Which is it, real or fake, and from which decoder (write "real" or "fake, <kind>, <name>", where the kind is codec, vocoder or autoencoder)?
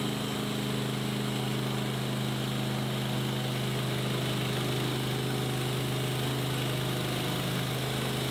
real